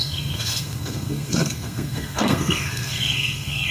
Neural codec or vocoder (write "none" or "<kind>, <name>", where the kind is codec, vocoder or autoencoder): codec, SNAC